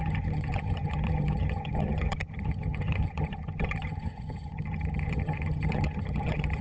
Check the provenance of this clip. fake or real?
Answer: fake